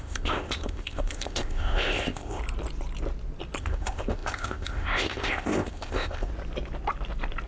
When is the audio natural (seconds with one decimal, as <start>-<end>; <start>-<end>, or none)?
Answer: 2.4-3.6; 6.3-7.5

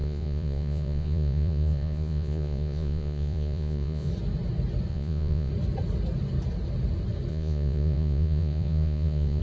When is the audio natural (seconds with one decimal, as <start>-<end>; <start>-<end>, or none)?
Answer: 4.1-4.9; 5.5-7.3

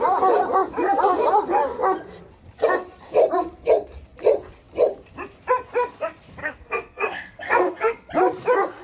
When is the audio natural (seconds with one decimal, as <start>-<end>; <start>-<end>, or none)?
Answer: 0.0-6.4; 8.1-8.8

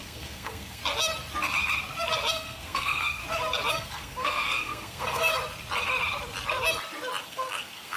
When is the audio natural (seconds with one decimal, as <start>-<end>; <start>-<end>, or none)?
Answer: 0.8-2.3; 3.2-3.7; 5.3-7.2

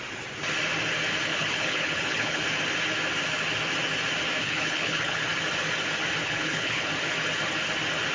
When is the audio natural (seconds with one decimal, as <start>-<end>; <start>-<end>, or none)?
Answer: 0.0-1.3; 2.4-4.4; 5.2-6.2; 6.9-8.1

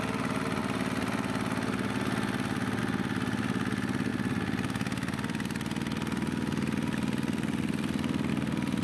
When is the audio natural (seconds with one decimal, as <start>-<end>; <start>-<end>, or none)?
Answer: 0.0-4.1; 8.3-8.8